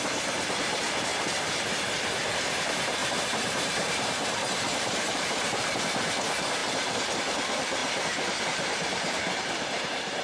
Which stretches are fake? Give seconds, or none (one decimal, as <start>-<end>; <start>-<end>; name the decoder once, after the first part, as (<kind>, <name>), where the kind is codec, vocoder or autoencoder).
0.0-1.1 (vocoder, BigVGAN v2); 2.6-7.8; 8.4-10.2